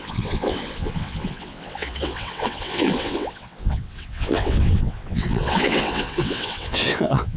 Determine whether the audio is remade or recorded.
remade